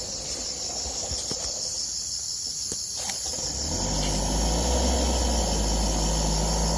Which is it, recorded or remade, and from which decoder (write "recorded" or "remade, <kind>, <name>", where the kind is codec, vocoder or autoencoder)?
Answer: recorded